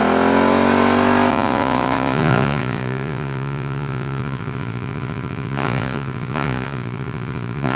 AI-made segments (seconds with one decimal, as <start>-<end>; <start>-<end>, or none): 1.3-7.8